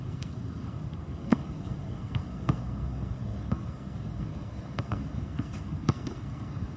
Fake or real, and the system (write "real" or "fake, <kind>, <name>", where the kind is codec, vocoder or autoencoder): fake, codec, SNAC